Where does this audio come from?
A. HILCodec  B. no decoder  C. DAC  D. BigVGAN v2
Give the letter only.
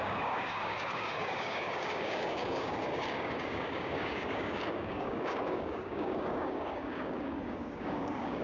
C